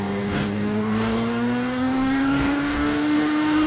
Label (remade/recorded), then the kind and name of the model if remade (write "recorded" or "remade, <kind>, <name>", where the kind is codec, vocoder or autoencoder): remade, codec, DAC